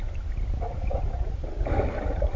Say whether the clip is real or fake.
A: real